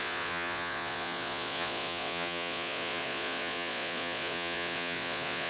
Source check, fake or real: fake